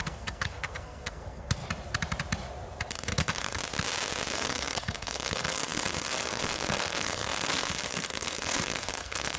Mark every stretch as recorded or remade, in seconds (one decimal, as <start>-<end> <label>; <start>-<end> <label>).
0.0-1.6 remade; 1.6-2.9 recorded; 2.9-3.6 remade; 3.6-4.3 recorded; 4.3-9.4 remade